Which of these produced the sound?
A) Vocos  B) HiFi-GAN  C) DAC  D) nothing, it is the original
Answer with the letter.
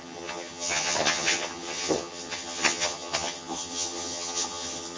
B